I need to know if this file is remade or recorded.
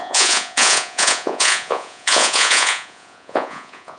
remade